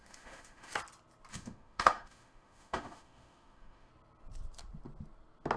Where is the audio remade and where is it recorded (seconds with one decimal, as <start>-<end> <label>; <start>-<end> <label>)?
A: 0.0-0.7 remade; 0.7-1.3 recorded; 1.3-3.9 remade; 3.9-5.6 recorded